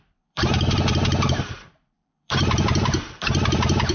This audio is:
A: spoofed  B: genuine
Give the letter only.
A